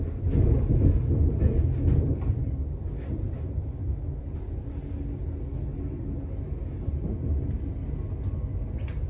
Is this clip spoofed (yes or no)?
no